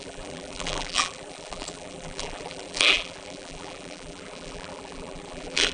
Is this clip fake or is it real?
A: fake